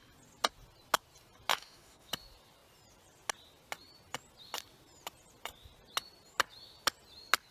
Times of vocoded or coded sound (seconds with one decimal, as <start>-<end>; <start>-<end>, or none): 1.5-2.1